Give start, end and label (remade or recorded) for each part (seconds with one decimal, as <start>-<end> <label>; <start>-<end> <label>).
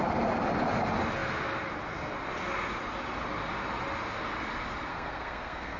0.0-4.9 recorded; 4.9-5.8 remade